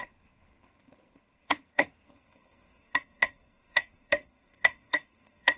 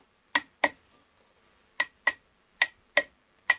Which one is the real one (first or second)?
second